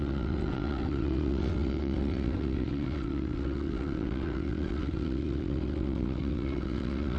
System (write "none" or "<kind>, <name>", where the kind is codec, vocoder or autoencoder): vocoder, WaveNeXt